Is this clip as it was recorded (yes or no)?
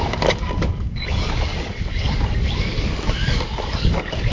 no